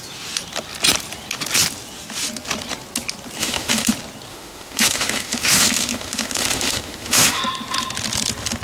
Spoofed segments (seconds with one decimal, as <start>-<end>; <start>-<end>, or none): 3.4-3.9; 4.3-7.4